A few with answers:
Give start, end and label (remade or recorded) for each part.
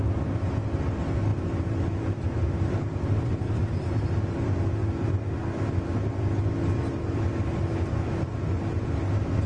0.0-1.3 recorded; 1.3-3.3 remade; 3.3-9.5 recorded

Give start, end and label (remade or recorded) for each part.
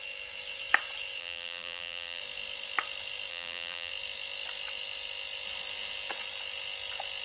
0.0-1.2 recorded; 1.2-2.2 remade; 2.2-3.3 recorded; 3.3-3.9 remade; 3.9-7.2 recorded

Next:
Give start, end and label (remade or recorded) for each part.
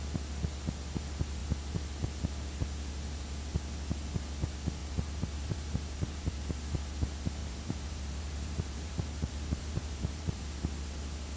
0.0-4.8 recorded; 4.8-6.4 remade; 6.4-7.4 recorded; 7.4-10.4 remade; 10.4-11.4 recorded